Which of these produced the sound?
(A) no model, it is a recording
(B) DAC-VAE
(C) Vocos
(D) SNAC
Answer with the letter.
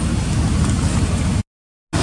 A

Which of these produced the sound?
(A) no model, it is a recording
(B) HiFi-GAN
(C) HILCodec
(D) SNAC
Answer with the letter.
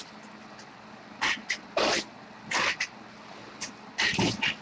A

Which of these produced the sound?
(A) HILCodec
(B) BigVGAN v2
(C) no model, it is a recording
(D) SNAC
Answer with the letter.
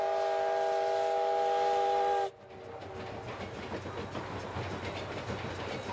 C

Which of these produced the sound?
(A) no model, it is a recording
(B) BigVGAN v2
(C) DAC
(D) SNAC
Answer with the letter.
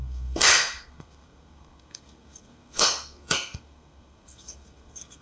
D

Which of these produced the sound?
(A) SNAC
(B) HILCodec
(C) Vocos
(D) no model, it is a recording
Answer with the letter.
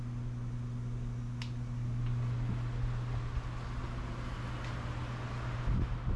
D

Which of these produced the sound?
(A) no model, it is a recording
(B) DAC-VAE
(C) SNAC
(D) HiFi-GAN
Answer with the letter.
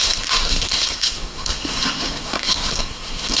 C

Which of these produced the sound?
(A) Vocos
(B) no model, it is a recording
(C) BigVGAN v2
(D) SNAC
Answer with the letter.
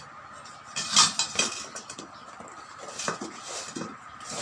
B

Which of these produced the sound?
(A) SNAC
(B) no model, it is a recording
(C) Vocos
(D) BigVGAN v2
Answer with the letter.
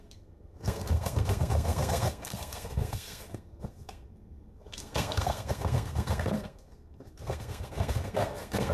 A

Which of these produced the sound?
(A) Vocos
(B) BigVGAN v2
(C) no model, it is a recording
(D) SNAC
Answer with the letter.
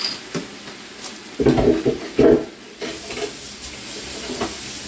C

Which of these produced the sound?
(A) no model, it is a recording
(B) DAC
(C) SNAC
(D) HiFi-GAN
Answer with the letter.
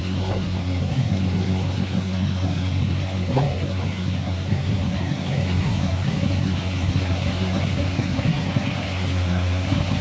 C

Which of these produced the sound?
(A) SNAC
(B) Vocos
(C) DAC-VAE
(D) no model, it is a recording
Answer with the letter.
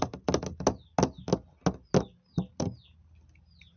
D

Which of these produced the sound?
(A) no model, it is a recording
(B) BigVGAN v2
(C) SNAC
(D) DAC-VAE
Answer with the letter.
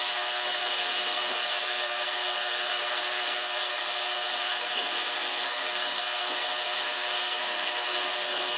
C